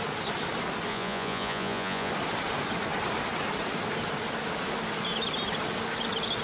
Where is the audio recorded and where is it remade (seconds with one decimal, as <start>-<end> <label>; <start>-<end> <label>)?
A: 0.0-0.9 recorded; 0.9-2.1 remade; 2.1-6.4 recorded